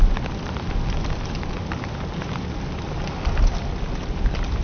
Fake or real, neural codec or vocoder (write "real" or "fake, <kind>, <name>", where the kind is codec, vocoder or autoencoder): real